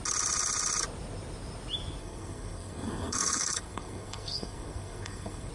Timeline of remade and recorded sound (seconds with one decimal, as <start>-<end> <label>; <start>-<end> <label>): 0.0-2.0 recorded; 2.0-5.5 remade